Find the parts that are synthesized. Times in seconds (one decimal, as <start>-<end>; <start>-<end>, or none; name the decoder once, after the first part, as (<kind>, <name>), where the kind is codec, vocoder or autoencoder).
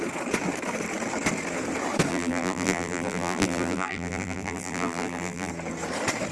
2.1-5.5 (vocoder, BigVGAN v2)